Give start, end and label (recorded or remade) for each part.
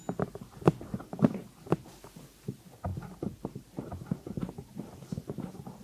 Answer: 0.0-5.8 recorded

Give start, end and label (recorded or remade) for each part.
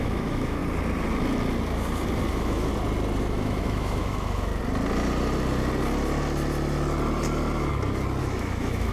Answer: 0.0-0.6 remade; 0.6-2.3 recorded; 2.3-2.7 remade; 2.7-3.2 recorded; 3.2-4.5 remade; 4.5-8.2 recorded; 8.2-8.9 remade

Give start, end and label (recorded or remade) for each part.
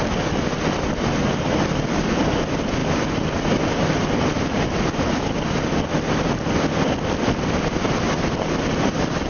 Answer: 0.0-9.3 recorded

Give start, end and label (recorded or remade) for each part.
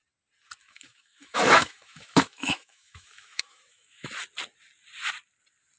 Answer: 0.0-0.6 recorded; 0.6-4.1 remade; 4.1-5.8 recorded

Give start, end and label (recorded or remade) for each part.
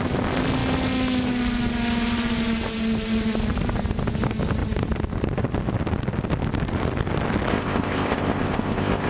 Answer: 0.0-7.5 recorded; 7.5-9.1 remade